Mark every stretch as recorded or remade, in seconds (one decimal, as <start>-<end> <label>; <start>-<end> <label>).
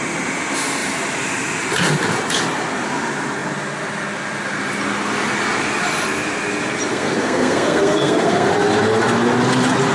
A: 0.0-6.9 recorded; 6.9-8.5 remade; 8.5-9.9 recorded